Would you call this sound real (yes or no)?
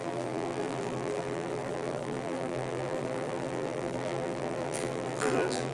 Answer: no